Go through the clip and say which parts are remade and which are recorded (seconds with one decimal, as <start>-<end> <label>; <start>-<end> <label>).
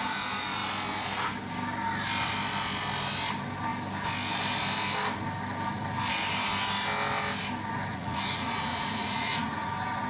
0.0-7.9 recorded; 7.9-9.7 remade; 9.7-10.1 recorded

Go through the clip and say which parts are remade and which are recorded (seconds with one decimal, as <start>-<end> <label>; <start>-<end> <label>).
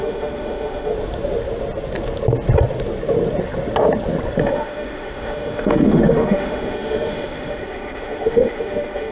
0.0-0.9 remade; 0.9-4.4 recorded; 4.4-9.1 remade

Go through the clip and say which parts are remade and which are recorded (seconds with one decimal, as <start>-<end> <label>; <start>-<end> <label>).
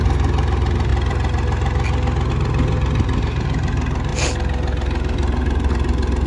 0.0-6.3 recorded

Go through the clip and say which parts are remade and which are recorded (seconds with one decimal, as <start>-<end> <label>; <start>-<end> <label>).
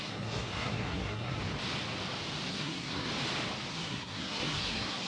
0.0-1.4 remade; 1.4-2.5 recorded; 2.5-3.1 remade; 3.1-3.7 recorded; 3.7-5.1 remade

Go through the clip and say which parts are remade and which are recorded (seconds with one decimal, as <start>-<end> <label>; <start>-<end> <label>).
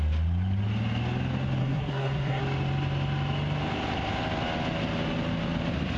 0.0-1.6 recorded; 1.6-2.4 remade; 2.4-6.0 recorded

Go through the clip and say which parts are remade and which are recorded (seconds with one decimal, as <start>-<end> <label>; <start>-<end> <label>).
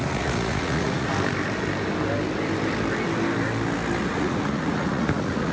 0.0-1.1 remade; 1.1-4.0 recorded; 4.0-5.5 remade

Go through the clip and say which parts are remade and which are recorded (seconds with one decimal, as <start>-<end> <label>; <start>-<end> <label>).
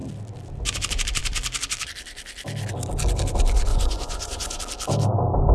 0.0-3.7 recorded; 3.7-4.6 remade; 4.6-5.5 recorded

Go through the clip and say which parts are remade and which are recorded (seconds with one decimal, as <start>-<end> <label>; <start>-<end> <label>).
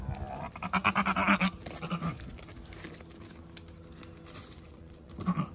0.0-4.4 recorded; 4.4-5.1 remade; 5.1-5.5 recorded